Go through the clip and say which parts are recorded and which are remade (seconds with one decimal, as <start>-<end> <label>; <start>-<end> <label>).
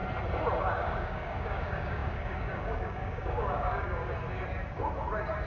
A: 0.0-0.6 recorded; 0.6-4.0 remade; 4.0-5.5 recorded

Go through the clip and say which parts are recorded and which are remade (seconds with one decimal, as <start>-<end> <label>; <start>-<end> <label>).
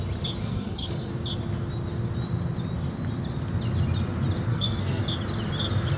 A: 0.0-0.4 recorded; 0.4-1.1 remade; 1.1-4.5 recorded; 4.5-5.0 remade; 5.0-6.0 recorded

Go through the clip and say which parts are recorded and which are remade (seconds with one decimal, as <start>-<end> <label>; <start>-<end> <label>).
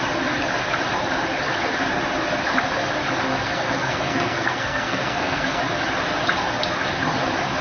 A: 0.0-3.3 recorded; 3.3-5.6 remade; 5.6-7.6 recorded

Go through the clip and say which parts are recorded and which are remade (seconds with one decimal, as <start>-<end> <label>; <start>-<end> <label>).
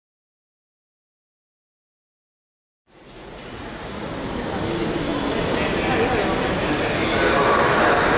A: 0.0-2.3 recorded; 2.3-4.1 remade; 4.1-8.2 recorded